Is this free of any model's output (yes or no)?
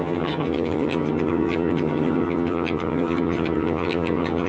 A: no